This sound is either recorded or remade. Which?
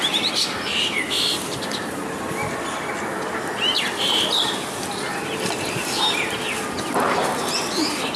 recorded